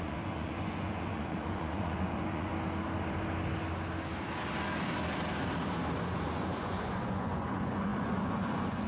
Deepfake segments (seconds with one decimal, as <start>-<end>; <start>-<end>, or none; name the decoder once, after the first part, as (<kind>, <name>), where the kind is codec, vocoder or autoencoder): 0.0-2.5 (vocoder, Vocos); 6.0-8.9